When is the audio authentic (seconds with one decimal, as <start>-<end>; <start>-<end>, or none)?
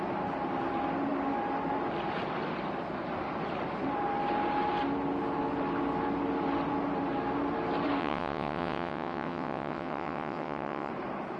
0.0-8.0; 10.9-11.4